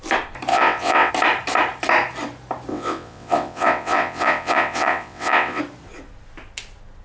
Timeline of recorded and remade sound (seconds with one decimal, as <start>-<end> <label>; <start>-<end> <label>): 0.0-0.5 recorded; 0.5-1.1 remade; 1.1-2.7 recorded; 2.7-5.6 remade; 5.6-7.0 recorded